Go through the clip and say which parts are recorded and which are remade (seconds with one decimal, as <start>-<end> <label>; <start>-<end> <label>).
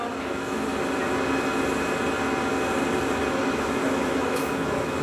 0.0-0.7 remade; 0.7-3.5 recorded; 3.5-5.0 remade